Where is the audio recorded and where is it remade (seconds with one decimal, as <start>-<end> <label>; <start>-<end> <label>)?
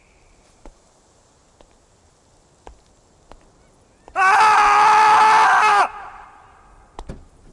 0.0-1.4 remade; 1.4-5.6 recorded; 5.6-7.5 remade